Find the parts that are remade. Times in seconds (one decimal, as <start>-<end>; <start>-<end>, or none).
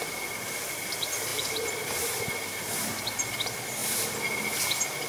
1.3-3.0; 3.8-4.6